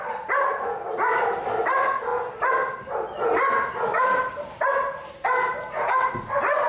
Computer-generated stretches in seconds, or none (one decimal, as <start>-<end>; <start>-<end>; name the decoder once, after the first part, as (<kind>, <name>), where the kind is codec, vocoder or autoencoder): none

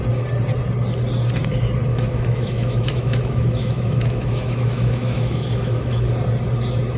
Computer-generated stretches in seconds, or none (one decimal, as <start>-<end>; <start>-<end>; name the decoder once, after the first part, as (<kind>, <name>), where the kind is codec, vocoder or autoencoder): 1.9-6.1 (autoencoder, DAC-VAE)

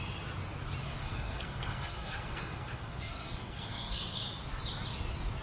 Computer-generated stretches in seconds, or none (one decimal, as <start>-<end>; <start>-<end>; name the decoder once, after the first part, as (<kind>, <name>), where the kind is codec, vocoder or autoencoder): 1.0-4.2 (codec, SNAC)

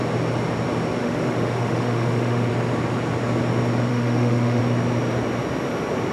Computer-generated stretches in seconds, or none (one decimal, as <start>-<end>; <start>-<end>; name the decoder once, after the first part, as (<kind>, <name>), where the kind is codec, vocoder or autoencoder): 1.0-2.5 (autoencoder, DAC-VAE); 3.9-4.6

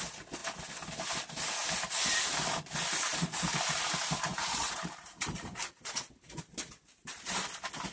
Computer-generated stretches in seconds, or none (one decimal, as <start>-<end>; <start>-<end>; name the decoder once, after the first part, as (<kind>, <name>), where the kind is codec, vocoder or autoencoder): 4.3-7.5 (vocoder, BigVGAN v2)